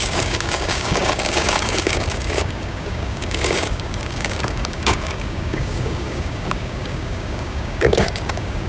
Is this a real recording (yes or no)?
no